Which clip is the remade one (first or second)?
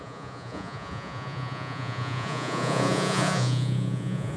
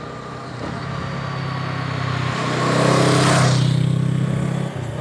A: first